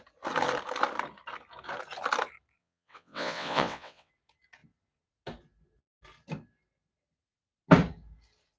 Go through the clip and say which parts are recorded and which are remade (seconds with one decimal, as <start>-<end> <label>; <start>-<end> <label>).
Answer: 0.0-2.6 recorded; 2.6-4.1 remade; 4.1-8.6 recorded